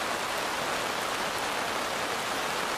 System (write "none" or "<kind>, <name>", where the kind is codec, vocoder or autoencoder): none